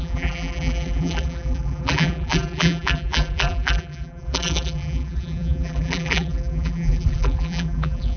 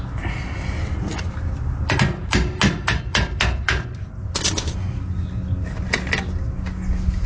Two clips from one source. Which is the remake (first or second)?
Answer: first